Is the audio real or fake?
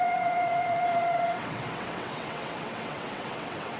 fake